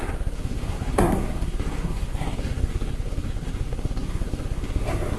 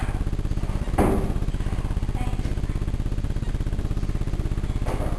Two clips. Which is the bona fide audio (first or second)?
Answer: second